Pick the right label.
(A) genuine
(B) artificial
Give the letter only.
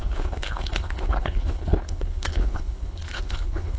B